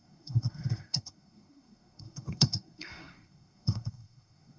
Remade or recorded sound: remade